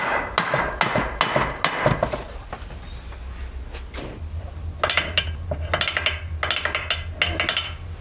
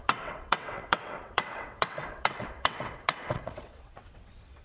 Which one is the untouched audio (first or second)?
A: first